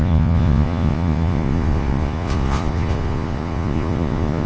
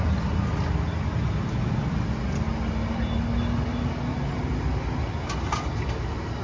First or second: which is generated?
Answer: first